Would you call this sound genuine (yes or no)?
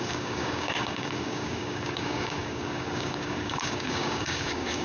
no